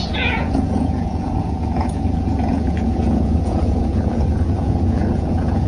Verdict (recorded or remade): remade